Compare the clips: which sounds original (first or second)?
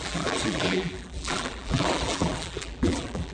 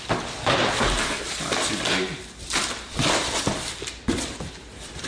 second